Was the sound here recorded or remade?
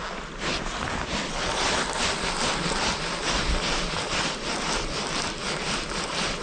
recorded